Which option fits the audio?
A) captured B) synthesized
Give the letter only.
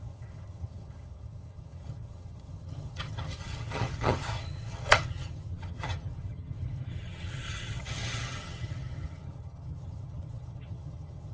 B